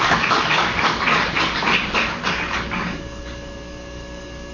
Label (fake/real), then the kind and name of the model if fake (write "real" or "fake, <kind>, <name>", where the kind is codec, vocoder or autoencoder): fake, codec, DAC